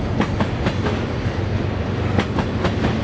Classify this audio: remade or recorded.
recorded